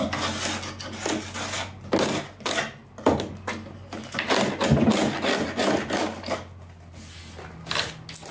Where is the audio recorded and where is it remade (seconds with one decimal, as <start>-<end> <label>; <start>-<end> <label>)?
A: 0.0-8.3 recorded